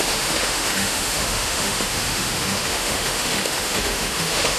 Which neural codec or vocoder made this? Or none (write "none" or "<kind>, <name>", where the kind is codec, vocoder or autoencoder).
autoencoder, DAC-VAE